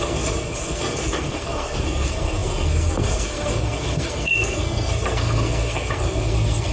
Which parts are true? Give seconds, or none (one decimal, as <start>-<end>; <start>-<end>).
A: none